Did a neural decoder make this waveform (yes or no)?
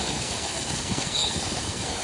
yes